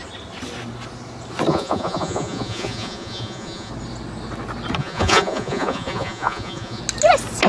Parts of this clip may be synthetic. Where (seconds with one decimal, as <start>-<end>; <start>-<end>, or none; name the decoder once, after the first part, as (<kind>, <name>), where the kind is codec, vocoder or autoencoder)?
1.5-3.7 (vocoder, Vocos); 4.8-6.8